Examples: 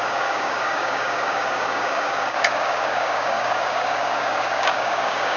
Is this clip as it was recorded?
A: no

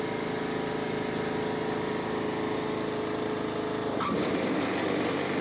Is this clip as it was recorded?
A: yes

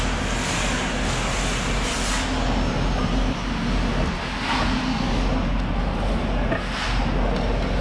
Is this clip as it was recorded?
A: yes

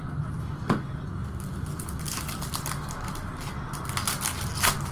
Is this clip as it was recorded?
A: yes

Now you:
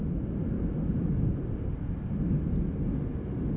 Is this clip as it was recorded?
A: yes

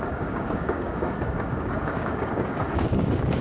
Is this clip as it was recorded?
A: no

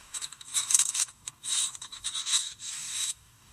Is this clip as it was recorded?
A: no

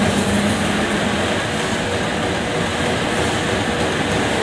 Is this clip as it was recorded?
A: yes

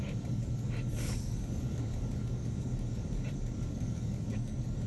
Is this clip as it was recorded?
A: no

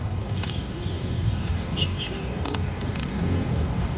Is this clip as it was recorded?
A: no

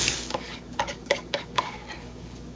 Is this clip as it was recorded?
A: no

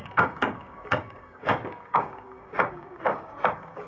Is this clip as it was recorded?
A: no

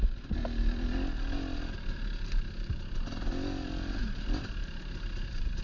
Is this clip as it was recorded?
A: yes